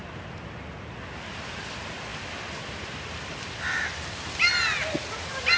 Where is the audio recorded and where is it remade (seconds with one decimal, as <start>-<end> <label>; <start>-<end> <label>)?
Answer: 0.0-2.1 recorded; 2.1-4.5 remade; 4.5-5.6 recorded